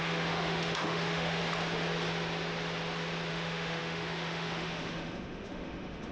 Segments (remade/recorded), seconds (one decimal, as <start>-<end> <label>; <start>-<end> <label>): 0.0-1.4 remade; 1.4-3.3 recorded; 3.3-6.1 remade